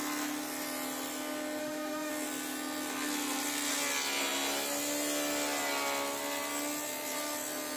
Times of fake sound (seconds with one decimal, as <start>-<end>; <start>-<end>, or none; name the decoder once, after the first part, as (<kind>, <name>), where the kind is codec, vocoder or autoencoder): 1.6-2.1 (autoencoder, DAC-VAE)